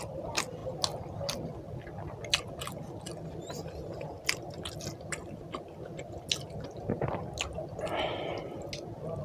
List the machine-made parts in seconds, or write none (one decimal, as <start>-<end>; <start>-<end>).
none